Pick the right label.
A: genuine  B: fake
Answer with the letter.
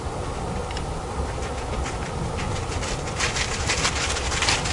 A